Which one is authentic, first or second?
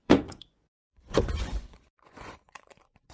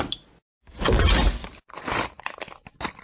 second